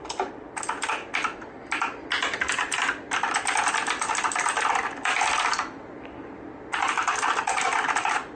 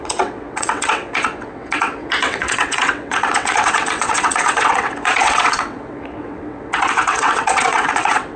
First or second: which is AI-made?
second